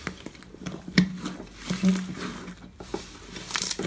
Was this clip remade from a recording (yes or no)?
no